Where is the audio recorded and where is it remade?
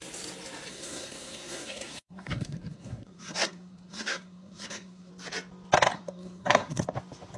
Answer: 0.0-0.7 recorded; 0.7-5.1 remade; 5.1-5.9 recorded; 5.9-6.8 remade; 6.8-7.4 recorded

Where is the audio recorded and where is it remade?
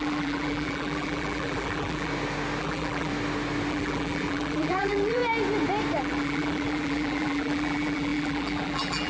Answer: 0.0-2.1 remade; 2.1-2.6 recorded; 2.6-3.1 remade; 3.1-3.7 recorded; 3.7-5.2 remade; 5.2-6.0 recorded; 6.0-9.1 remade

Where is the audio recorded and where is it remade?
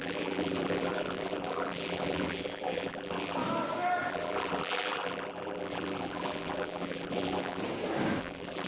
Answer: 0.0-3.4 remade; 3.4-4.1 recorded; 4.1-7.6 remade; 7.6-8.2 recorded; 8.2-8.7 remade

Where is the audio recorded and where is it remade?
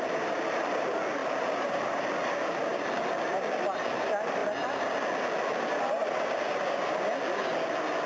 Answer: 0.0-1.2 remade; 1.2-1.7 recorded; 1.7-4.4 remade; 4.4-8.1 recorded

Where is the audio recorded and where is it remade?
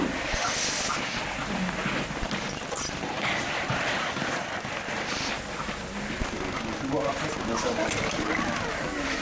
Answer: 0.0-9.2 recorded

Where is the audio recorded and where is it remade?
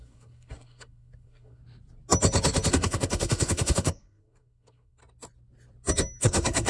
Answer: 0.0-1.6 remade; 1.6-2.7 recorded; 2.7-5.0 remade; 5.0-6.2 recorded; 6.2-6.7 remade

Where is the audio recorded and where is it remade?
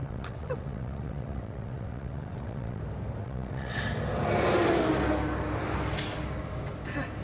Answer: 0.0-2.8 remade; 2.8-3.2 recorded; 3.2-3.8 remade; 3.8-7.2 recorded